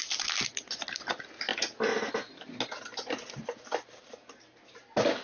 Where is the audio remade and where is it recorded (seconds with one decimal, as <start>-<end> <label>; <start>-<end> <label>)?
0.0-5.2 recorded

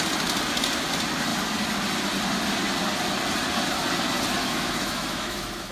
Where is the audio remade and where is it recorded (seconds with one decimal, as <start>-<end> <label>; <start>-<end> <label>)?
0.0-4.4 recorded; 4.4-5.7 remade

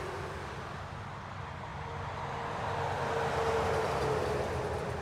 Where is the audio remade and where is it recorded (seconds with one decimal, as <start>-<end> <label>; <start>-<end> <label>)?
0.0-5.0 recorded

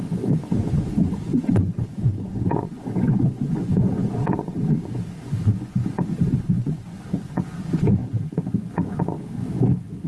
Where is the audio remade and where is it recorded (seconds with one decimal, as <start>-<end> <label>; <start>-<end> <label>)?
0.0-10.1 remade